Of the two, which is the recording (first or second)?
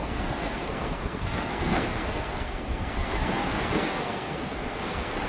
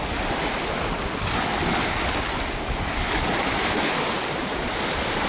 second